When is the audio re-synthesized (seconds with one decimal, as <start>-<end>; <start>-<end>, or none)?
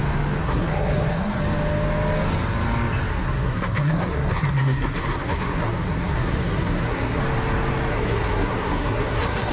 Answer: 0.4-1.4; 3.1-7.2; 7.9-9.5